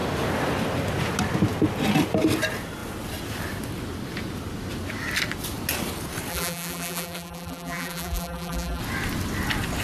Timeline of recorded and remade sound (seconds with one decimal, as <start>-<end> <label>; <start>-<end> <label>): 0.0-6.3 recorded; 6.3-8.8 remade; 8.8-9.8 recorded